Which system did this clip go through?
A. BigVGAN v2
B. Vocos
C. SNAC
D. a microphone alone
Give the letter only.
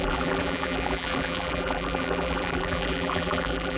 A